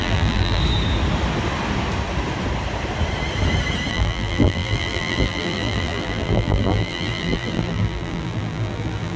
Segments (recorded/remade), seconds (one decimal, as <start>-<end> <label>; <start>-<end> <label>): 0.0-0.6 remade; 0.6-3.9 recorded; 3.9-9.2 remade